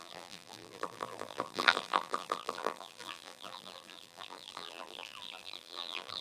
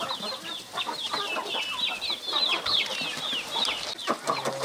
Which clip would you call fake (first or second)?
first